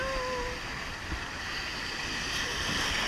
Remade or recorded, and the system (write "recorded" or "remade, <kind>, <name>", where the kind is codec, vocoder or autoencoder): recorded